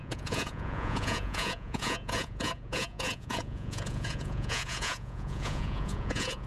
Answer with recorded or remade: remade